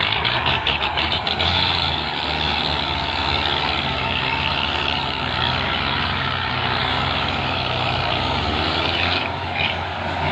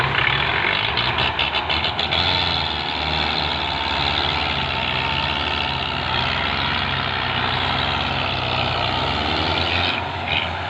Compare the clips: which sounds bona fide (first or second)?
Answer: second